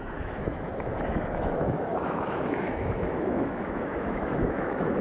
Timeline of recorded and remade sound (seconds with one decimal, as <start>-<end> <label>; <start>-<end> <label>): 0.0-5.0 remade